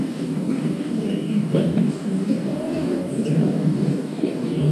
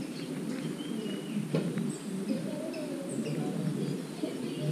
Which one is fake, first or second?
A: first